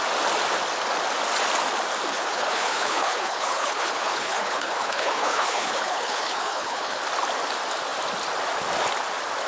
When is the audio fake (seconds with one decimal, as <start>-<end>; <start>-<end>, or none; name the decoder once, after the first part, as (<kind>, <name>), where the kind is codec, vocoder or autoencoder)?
2.1-7.0 (codec, HILCodec)